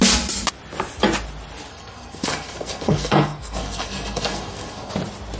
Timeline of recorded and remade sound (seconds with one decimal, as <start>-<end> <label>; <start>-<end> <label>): 0.0-1.7 recorded; 1.7-4.9 remade; 4.9-5.4 recorded